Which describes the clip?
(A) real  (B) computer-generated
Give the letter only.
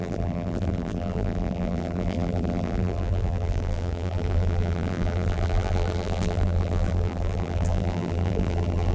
B